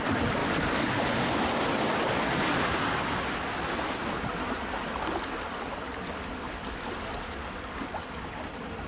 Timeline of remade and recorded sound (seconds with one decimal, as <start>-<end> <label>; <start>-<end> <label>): 0.0-8.9 recorded